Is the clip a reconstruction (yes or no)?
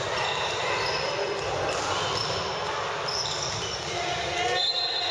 no